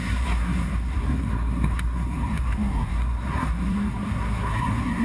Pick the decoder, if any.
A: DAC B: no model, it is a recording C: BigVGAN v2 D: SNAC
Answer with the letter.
D